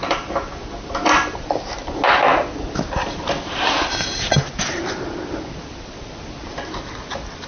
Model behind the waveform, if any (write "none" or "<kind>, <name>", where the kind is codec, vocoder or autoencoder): none